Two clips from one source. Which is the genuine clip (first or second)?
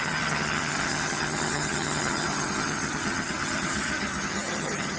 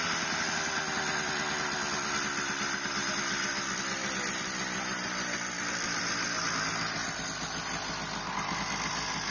second